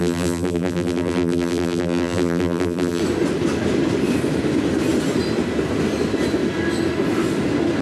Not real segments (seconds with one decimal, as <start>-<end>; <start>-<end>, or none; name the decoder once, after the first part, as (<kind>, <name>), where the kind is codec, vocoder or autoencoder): 0.0-3.0 (vocoder, BigVGAN v2)